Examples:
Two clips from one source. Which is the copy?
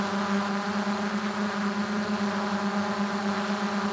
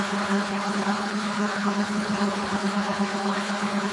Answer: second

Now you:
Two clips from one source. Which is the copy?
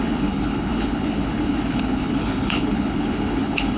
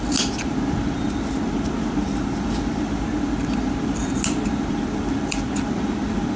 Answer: first